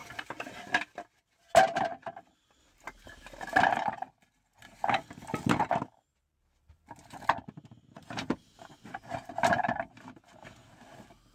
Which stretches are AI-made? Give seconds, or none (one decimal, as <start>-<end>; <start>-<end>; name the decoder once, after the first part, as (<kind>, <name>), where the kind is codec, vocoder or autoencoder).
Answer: none